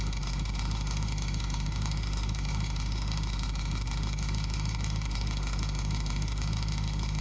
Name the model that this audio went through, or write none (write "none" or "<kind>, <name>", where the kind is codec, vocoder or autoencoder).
autoencoder, DAC-VAE